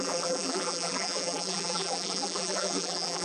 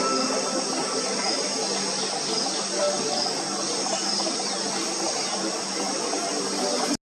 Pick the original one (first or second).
second